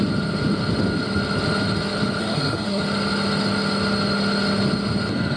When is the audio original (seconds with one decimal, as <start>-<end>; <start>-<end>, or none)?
0.0-2.2; 2.8-5.4